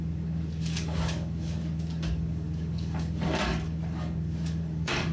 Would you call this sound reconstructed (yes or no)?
yes